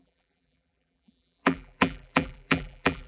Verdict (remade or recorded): remade